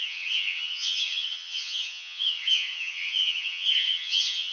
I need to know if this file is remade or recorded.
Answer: remade